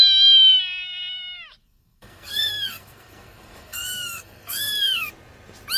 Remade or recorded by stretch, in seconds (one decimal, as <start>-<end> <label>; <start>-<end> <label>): 0.0-1.6 recorded; 1.6-5.1 remade; 5.1-5.8 recorded